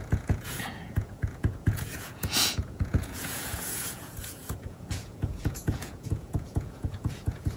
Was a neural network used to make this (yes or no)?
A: yes